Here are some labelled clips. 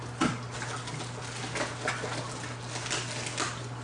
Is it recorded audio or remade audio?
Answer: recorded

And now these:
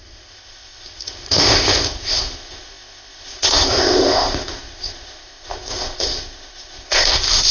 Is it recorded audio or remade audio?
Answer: remade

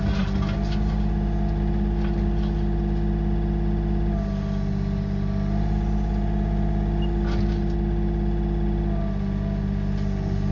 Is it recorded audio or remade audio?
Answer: recorded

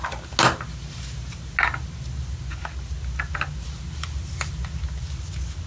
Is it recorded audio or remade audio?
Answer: recorded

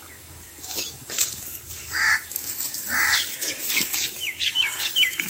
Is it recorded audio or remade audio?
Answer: remade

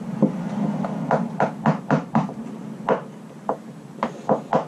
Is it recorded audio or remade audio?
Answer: recorded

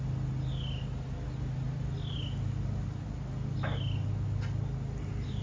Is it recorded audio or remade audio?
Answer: recorded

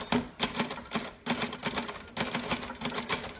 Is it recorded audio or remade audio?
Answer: recorded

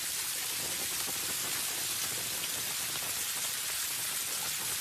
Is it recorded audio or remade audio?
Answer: recorded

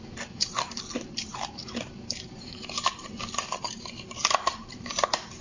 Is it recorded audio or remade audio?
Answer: remade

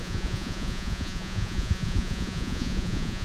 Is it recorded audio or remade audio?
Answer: remade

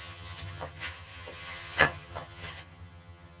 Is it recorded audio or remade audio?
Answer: remade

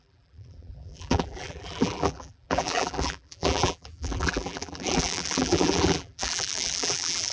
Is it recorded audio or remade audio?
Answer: remade